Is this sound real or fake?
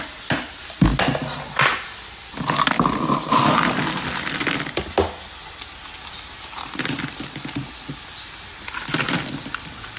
real